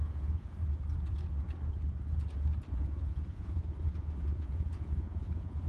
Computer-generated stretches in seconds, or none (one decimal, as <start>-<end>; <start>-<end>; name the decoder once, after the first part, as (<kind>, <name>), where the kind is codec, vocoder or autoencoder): 0.0-0.6 (vocoder, Vocos); 2.7-5.7